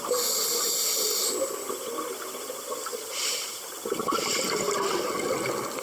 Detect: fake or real real